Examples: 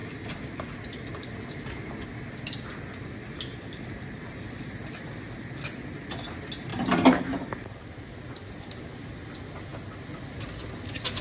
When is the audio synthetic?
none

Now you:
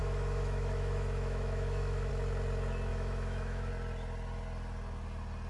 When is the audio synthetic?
0.0-2.1 (autoencoder, DAC-VAE); 2.9-3.7

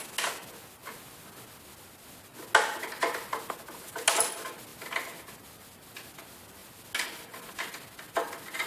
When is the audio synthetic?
none

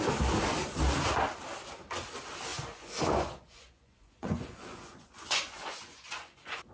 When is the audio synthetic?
2.5-6.7 (vocoder, Vocos)